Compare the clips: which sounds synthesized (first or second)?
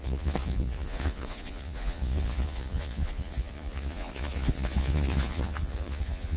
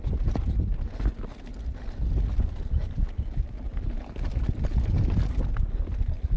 first